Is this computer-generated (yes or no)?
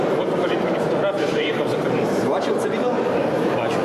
yes